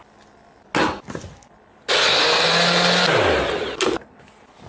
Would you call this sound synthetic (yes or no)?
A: no